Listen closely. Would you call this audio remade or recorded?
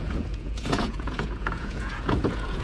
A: remade